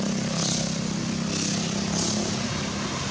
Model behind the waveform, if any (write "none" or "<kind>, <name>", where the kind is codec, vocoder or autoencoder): none